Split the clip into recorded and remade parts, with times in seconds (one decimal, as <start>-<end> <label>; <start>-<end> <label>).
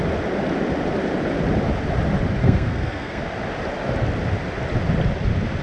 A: 0.0-2.4 recorded; 2.4-3.2 remade; 3.2-5.6 recorded